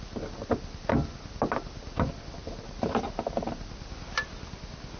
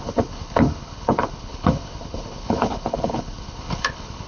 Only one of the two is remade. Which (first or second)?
second